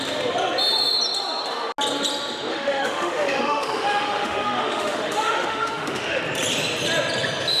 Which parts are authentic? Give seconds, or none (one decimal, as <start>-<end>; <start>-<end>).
0.0-2.5; 6.2-7.6